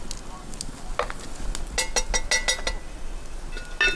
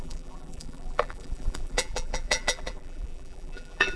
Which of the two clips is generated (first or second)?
second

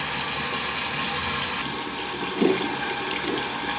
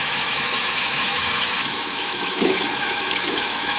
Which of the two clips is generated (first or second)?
second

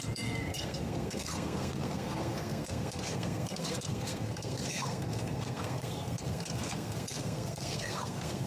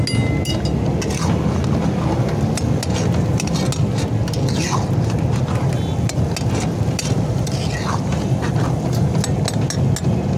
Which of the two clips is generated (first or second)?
first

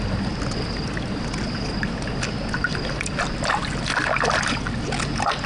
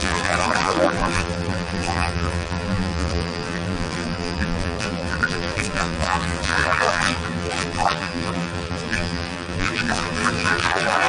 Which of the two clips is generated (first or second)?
second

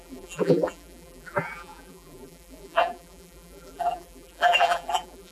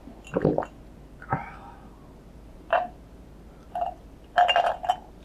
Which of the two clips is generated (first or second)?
first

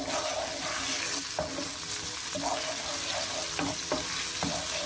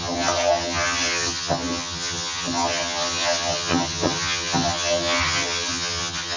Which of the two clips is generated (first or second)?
second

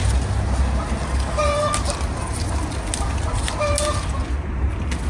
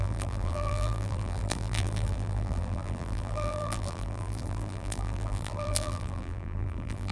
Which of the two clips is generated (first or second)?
second